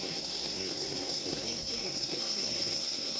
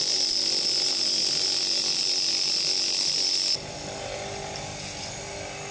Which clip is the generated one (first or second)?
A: first